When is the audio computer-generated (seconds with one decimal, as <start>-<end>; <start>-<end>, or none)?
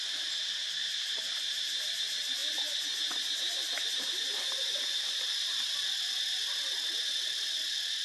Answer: 0.8-1.9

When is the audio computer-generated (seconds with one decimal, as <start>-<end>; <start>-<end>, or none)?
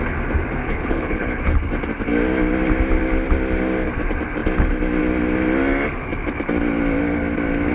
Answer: 0.6-1.4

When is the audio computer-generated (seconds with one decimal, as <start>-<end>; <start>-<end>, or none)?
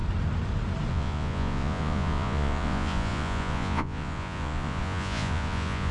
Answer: 0.9-5.9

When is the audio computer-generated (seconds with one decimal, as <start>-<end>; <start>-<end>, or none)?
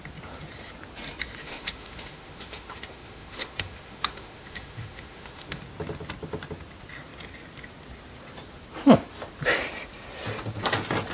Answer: 1.4-5.6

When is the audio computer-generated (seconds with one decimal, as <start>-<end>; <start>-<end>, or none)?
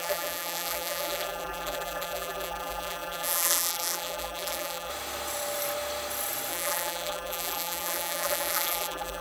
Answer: 0.0-4.9; 6.5-9.2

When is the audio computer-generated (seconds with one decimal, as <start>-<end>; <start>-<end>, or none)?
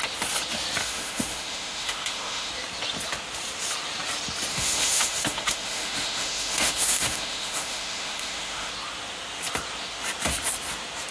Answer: 0.8-2.5; 4.5-8.7